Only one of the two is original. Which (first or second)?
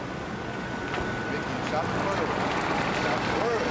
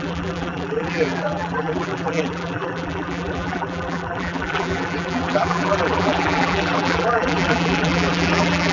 first